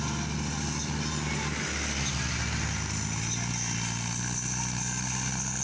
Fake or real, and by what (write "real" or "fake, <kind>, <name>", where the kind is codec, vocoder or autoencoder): real